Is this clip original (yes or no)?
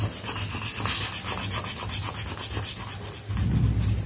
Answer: yes